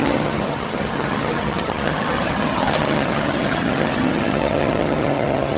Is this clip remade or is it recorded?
remade